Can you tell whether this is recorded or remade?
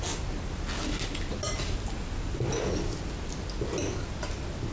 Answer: recorded